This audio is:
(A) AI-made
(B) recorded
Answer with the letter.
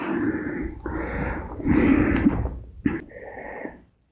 B